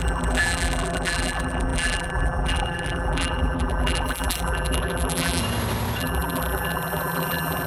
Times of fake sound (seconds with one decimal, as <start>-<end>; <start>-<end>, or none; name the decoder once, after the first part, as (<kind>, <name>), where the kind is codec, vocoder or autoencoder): 0.0-5.4 (vocoder, BigVGAN v2); 6.0-7.7